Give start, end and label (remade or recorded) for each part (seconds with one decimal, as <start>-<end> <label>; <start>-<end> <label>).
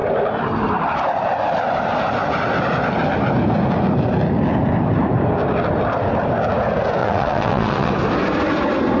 0.0-7.0 recorded; 7.0-7.9 remade; 7.9-9.0 recorded